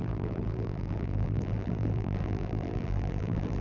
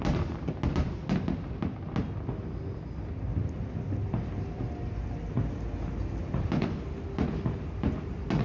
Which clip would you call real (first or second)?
second